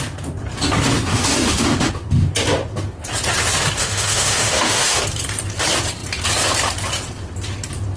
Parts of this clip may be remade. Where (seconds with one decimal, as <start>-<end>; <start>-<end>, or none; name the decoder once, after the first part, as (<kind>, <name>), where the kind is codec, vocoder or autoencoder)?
1.1-1.9 (autoencoder, DAC-VAE); 3.8-5.0